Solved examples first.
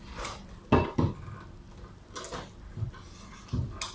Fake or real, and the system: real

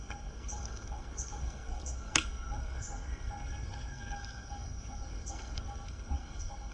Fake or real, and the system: fake, codec, SNAC